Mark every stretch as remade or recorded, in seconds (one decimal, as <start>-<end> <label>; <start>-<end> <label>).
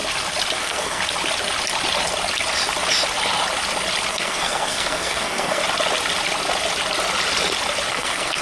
0.0-0.6 recorded; 0.6-1.0 remade; 1.0-4.1 recorded; 4.1-5.6 remade; 5.6-7.9 recorded; 7.9-8.4 remade